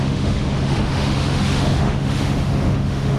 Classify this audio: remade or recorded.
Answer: remade